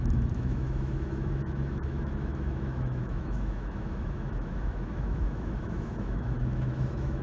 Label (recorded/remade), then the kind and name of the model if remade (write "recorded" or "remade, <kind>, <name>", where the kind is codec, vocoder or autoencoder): remade, autoencoder, DAC-VAE